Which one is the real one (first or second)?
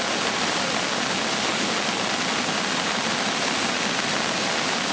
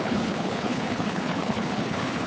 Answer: first